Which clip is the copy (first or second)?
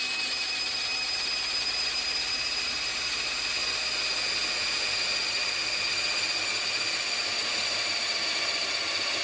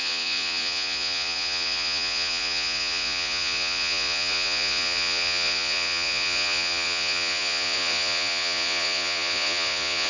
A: second